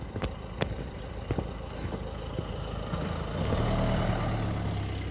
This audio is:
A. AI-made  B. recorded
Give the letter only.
B